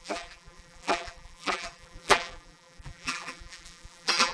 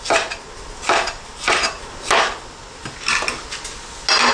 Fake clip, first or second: first